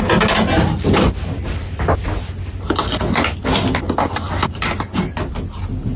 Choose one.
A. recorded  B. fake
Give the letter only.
A